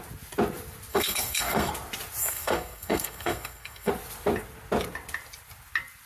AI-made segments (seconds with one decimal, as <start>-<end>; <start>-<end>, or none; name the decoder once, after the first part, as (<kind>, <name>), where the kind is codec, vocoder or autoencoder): 0.9-1.7 (codec, SNAC); 2.2-3.9